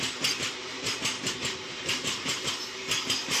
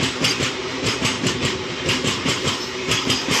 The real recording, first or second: first